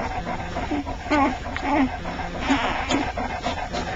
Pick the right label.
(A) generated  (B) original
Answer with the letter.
B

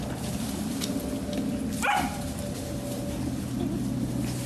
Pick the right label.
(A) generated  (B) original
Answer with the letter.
B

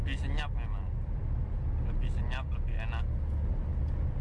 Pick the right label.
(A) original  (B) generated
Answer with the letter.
A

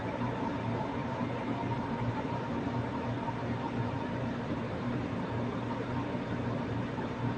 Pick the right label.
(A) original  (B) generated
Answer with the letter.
B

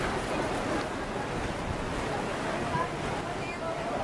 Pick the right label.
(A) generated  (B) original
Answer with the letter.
B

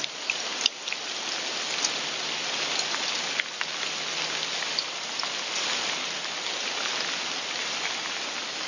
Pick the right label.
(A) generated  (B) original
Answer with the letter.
B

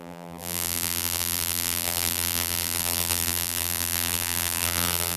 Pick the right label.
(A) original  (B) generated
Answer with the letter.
B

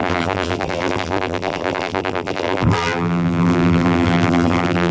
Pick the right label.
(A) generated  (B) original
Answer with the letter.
A